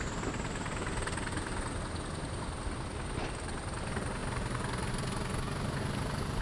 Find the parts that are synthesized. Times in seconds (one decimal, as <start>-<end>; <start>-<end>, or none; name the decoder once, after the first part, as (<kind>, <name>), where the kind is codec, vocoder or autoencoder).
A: none